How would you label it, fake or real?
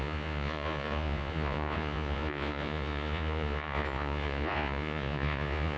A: fake